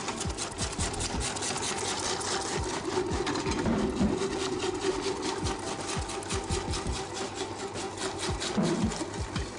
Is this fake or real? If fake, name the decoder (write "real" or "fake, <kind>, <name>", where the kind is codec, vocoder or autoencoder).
real